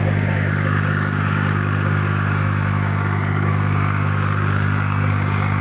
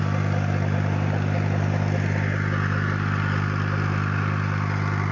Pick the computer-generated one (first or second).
first